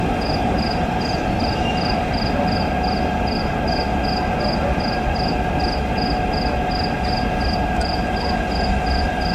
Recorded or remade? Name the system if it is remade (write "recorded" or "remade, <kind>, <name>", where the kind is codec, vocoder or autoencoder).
recorded